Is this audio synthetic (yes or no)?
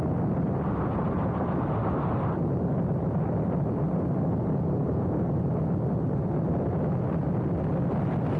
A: no